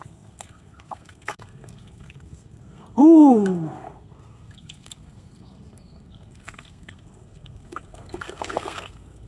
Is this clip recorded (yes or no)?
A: no